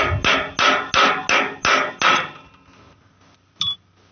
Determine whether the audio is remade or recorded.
recorded